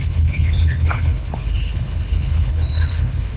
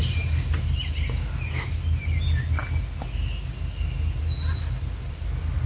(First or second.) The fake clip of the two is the first